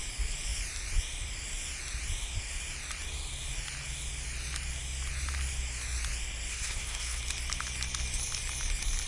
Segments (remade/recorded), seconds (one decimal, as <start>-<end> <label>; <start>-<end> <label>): 0.0-6.5 recorded; 6.5-7.2 remade; 7.2-9.1 recorded